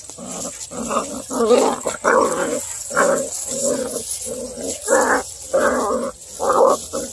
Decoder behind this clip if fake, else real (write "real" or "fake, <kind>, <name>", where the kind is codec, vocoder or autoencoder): real